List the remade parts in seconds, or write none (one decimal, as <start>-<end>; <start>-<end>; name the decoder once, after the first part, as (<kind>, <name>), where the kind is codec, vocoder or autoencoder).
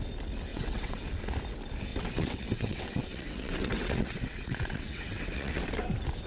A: 0.5-1.1 (vocoder, WaveNeXt); 1.9-5.7